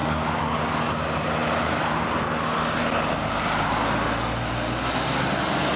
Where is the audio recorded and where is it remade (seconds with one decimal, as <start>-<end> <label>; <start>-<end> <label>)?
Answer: 0.0-0.9 remade; 0.9-5.8 recorded